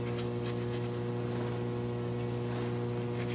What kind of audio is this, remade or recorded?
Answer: recorded